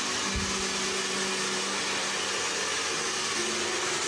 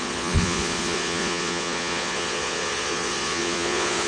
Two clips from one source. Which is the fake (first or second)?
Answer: second